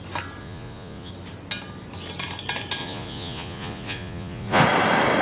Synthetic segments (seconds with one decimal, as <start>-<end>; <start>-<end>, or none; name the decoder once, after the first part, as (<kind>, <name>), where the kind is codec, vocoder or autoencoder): 0.4-1.1 (vocoder, Vocos); 2.8-4.6